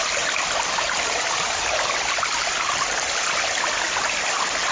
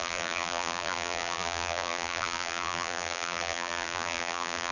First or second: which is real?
first